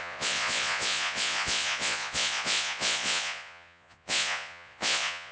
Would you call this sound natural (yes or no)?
no